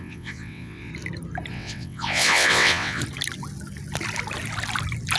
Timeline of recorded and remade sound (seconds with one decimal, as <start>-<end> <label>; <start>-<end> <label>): 0.0-0.9 remade; 0.9-1.5 recorded; 1.5-3.0 remade; 3.0-5.2 recorded